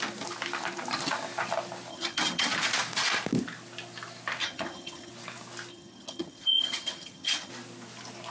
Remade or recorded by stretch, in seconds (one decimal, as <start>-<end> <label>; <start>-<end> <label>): 0.0-1.9 recorded; 1.9-2.5 remade; 2.5-4.4 recorded; 4.4-5.1 remade; 5.1-5.7 recorded; 5.7-7.5 remade; 7.5-8.3 recorded